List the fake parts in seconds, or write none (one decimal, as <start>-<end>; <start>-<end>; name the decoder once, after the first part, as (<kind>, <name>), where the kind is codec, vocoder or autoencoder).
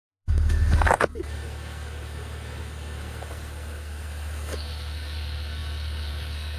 0.0-6.6 (codec, SNAC)